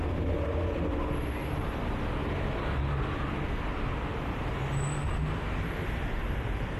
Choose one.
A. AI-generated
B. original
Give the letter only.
B